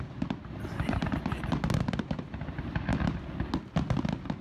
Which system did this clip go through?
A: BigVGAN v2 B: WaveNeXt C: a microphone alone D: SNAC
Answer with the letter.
C